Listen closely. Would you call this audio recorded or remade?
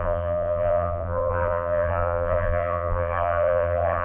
remade